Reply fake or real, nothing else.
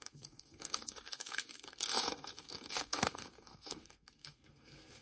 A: fake